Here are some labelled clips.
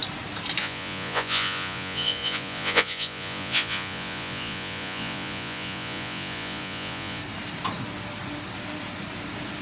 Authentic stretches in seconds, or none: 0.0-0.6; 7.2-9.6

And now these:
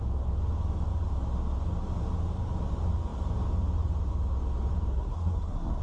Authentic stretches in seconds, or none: 0.0-4.9